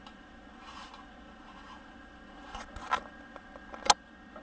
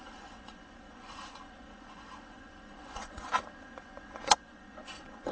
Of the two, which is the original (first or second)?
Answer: first